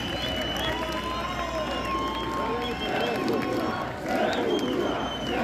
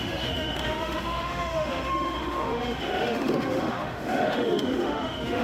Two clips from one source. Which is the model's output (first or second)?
second